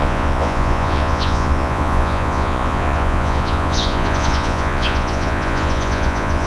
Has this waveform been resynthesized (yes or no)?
yes